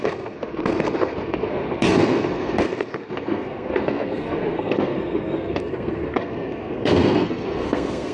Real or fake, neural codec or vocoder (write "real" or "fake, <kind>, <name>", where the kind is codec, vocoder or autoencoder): fake, codec, SNAC